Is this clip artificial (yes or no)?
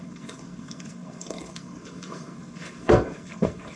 yes